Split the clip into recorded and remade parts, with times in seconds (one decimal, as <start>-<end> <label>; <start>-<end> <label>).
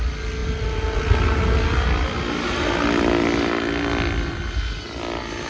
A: 0.0-5.5 recorded